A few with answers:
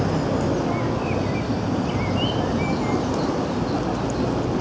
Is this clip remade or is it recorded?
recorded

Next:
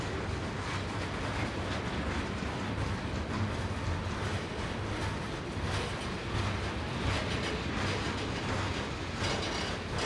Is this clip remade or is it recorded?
recorded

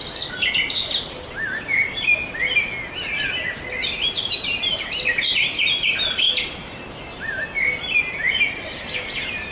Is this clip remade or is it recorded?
recorded